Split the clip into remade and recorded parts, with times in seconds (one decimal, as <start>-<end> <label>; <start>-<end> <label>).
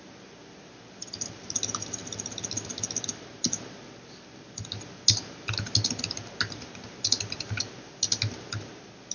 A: 0.0-9.1 recorded